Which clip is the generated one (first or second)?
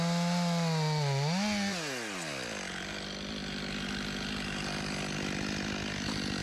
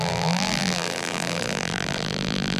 second